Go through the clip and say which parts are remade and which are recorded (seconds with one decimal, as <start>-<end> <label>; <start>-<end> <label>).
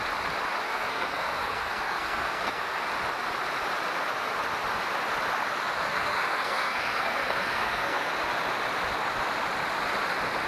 0.0-0.7 recorded; 0.7-2.9 remade; 2.9-5.9 recorded; 5.9-8.1 remade; 8.1-10.5 recorded